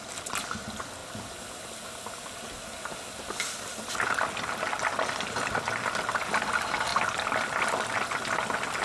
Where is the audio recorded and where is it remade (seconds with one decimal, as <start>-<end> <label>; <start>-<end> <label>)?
0.0-8.8 recorded